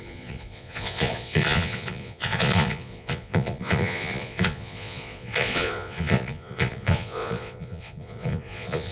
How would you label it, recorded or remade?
remade